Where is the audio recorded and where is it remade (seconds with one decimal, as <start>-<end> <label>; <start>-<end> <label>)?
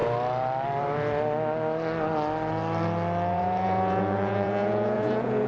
0.0-3.3 recorded; 3.3-5.5 remade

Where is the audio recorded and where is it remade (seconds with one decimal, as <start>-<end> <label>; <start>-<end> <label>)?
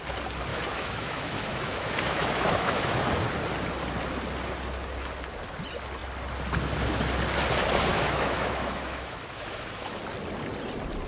0.0-0.5 recorded; 0.5-3.1 remade; 3.1-7.9 recorded; 7.9-10.0 remade; 10.0-11.1 recorded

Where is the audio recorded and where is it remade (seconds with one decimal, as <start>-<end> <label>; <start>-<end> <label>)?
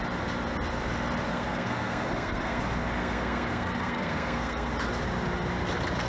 0.0-1.3 recorded; 1.3-2.6 remade; 2.6-3.0 recorded; 3.0-4.7 remade; 4.7-6.1 recorded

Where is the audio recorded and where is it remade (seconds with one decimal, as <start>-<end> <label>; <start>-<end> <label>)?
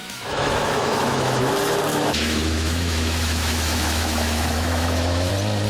0.0-1.5 remade; 1.5-1.9 recorded; 1.9-5.3 remade; 5.3-5.7 recorded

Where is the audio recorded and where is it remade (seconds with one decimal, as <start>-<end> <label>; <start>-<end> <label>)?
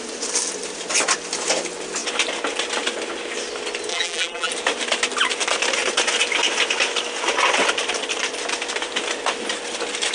0.0-3.9 recorded; 3.9-4.5 remade; 4.5-10.1 recorded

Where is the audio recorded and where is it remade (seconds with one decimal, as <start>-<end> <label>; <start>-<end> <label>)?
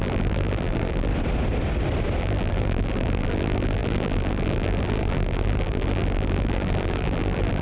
0.0-1.1 remade; 1.1-2.2 recorded; 2.2-7.6 remade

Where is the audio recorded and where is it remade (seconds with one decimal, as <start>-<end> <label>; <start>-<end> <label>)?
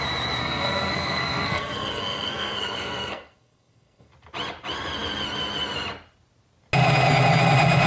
0.0-0.4 recorded; 0.4-4.1 remade; 4.1-7.9 recorded